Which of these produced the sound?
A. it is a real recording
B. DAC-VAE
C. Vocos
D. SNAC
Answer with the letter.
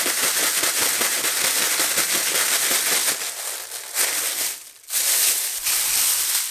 A